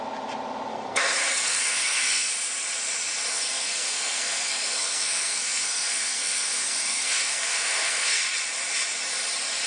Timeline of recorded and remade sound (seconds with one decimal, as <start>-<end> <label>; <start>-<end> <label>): 0.0-0.7 recorded; 0.7-2.3 remade; 2.3-3.3 recorded; 3.3-8.2 remade; 8.2-9.7 recorded